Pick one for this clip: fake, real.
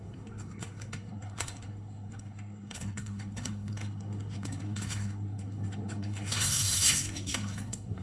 fake